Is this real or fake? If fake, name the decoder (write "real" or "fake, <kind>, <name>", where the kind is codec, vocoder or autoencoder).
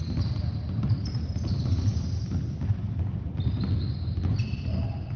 real